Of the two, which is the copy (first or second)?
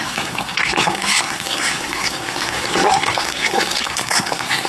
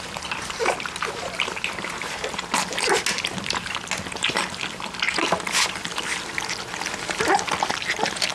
first